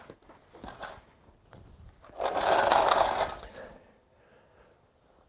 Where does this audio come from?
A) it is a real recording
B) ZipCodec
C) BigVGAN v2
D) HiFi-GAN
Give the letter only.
A